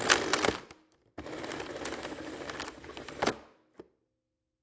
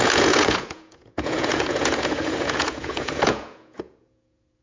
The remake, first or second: second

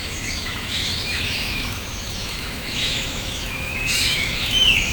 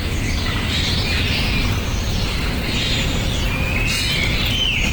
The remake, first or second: first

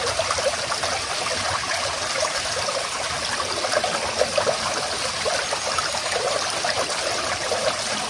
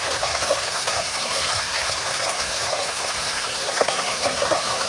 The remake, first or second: second